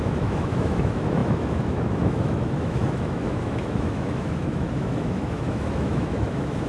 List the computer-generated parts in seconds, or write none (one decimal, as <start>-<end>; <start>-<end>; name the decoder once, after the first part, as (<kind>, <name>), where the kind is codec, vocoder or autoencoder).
0.0-6.7 (autoencoder, DAC-VAE)